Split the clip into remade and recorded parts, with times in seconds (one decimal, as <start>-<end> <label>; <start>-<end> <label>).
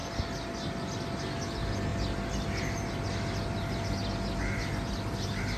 0.0-5.6 recorded